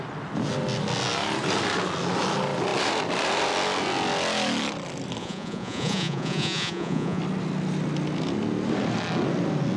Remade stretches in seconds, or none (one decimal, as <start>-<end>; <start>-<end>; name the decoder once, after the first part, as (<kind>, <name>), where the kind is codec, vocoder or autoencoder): 5.2-7.2 (vocoder, Vocos)